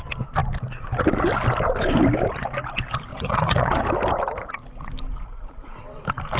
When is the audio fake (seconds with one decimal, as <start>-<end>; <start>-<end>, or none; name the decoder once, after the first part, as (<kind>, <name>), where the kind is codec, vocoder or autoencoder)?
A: 3.1-3.8 (vocoder, Vocos)